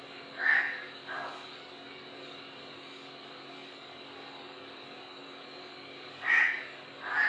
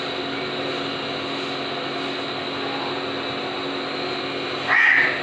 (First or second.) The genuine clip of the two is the second